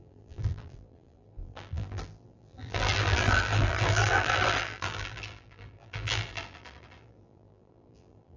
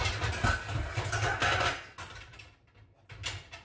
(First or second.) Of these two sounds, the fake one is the first